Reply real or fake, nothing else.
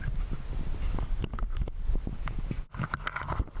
real